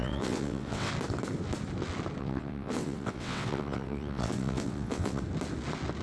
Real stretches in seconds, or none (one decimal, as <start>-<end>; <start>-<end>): 0.9-2.2; 5.2-6.0